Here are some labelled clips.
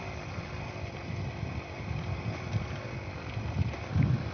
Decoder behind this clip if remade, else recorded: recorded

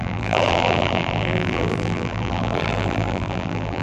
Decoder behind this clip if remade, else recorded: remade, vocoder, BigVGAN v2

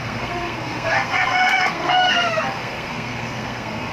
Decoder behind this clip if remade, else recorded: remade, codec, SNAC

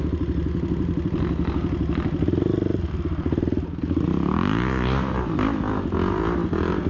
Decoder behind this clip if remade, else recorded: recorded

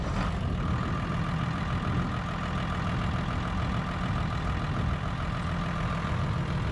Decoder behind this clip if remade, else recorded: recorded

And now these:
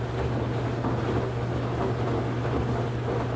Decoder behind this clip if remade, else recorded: recorded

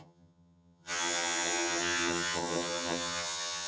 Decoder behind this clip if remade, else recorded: remade, vocoder, HiFi-GAN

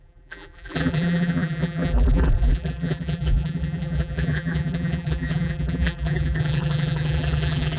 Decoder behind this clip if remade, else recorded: remade, vocoder, BigVGAN v2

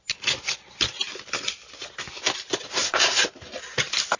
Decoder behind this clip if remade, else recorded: recorded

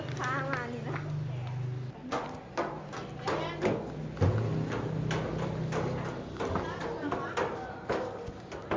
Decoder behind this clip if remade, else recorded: recorded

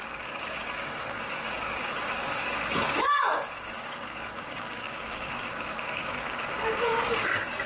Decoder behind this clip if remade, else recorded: remade, codec, DAC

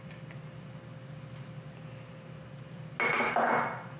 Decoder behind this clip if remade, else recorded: recorded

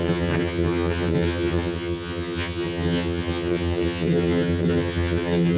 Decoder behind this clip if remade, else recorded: remade, vocoder, HiFi-GAN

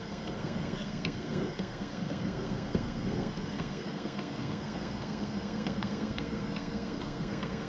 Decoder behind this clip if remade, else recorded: remade, codec, SNAC